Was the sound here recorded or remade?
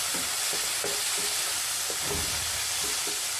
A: remade